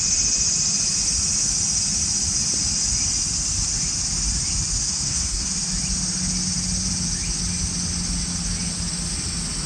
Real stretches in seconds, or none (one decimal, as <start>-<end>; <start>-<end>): 0.0-4.8; 5.5-9.7